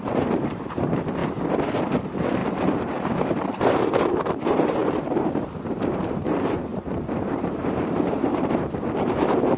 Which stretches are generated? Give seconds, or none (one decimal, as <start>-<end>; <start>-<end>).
0.0-1.2; 1.8-9.6